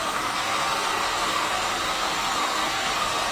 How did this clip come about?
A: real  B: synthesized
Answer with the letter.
B